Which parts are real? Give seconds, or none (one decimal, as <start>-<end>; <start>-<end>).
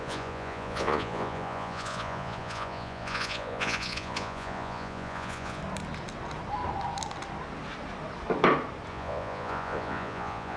5.6-8.9